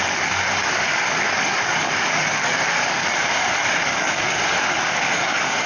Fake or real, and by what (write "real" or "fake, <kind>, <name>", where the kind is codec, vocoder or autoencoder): fake, codec, DAC